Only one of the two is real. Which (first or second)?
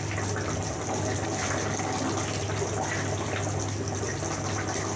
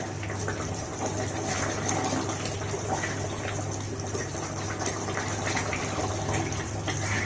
first